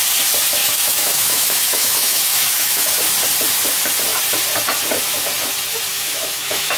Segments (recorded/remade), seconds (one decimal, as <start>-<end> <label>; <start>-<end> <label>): 0.0-0.6 recorded; 0.6-3.0 remade; 3.0-5.9 recorded; 5.9-6.8 remade